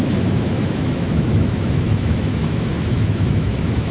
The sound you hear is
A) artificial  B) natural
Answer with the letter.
A